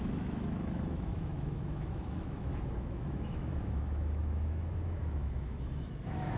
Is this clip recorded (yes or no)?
no